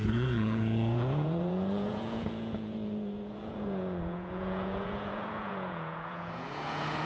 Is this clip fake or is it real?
fake